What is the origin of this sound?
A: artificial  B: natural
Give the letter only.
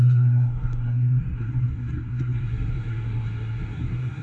A